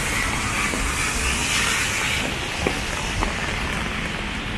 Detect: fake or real real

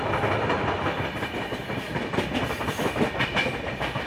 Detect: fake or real fake